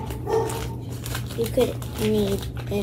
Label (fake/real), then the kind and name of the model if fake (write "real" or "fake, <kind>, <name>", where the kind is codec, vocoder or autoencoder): real